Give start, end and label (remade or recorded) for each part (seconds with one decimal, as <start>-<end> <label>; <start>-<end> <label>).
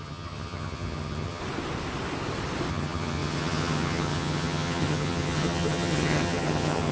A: 0.0-1.4 remade; 1.4-2.7 recorded; 2.7-6.9 remade